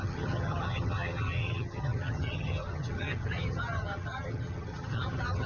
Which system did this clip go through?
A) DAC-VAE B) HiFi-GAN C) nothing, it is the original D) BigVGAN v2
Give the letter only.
B